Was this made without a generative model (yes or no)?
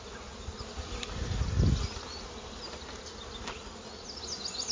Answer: yes